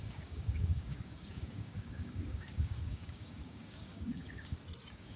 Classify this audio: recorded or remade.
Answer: remade